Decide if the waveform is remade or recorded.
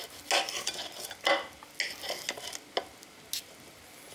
recorded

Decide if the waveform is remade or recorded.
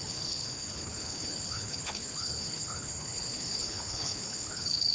remade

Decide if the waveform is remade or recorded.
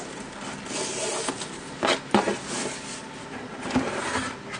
recorded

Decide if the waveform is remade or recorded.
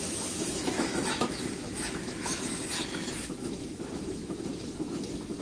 remade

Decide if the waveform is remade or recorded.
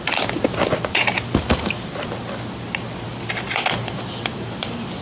recorded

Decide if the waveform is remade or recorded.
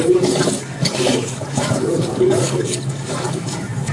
remade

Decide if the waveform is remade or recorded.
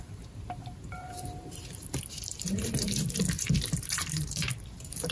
remade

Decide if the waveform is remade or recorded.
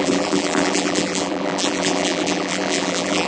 remade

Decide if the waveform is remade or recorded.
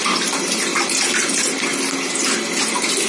recorded